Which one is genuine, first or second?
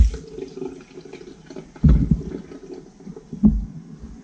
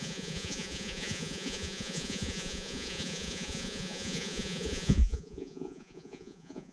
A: first